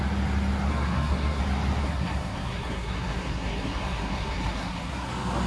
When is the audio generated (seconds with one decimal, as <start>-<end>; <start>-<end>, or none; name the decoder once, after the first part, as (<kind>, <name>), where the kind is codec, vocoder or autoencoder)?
0.7-1.4 (codec, SNAC); 1.8-5.1